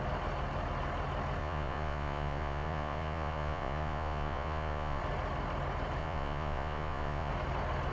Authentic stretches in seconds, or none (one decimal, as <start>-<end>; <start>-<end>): 0.0-1.4; 5.0-6.0; 7.3-7.9